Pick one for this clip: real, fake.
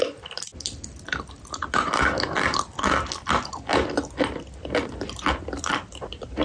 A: real